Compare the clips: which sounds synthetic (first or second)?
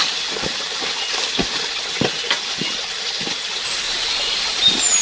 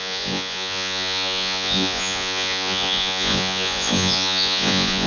second